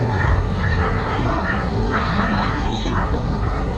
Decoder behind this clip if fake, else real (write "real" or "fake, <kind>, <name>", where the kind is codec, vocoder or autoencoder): fake, codec, SNAC